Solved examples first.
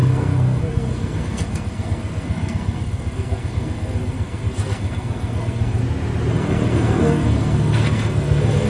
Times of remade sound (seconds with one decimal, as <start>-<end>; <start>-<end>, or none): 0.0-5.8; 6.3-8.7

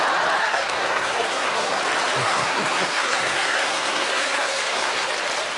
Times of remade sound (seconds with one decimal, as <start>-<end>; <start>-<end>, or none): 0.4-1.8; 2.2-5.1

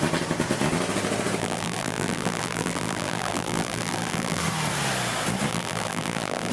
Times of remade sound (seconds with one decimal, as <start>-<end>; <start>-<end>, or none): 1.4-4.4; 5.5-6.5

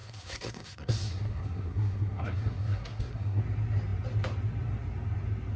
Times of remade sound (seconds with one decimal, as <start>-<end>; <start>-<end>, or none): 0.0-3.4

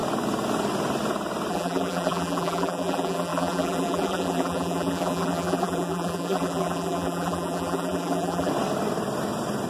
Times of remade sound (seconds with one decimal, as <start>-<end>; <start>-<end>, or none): 1.5-8.5

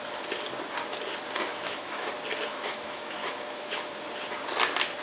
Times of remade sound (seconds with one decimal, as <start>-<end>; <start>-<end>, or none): 1.5-2.1; 2.5-4.0

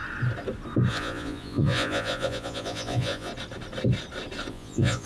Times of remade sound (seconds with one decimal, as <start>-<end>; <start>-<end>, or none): 0.9-3.3; 4.5-5.1

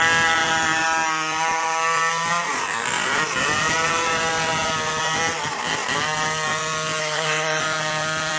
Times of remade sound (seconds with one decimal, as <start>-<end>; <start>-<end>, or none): 7.0-7.6